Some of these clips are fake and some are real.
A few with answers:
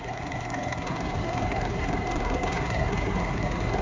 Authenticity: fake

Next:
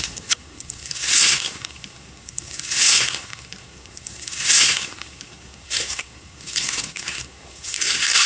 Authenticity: fake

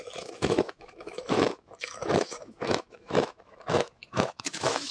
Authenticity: fake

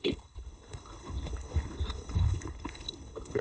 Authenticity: fake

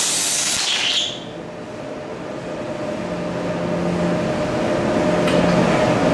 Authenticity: real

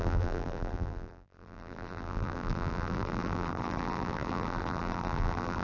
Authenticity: fake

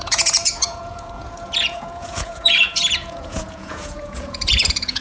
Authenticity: fake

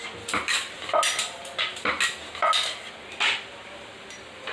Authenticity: real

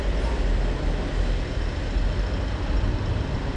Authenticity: real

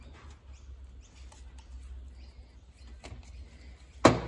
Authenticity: real